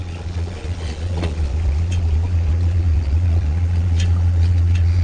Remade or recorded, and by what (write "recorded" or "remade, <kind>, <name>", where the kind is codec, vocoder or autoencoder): remade, vocoder, Vocos